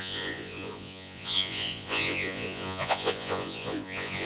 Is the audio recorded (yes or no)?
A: no